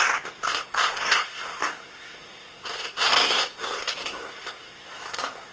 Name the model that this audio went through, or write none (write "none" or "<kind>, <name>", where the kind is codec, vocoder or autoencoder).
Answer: codec, SNAC